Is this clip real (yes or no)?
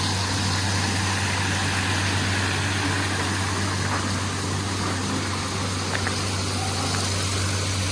yes